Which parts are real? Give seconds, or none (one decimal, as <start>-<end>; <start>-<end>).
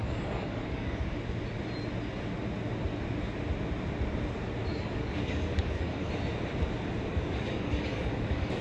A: 1.2-4.7; 6.1-7.1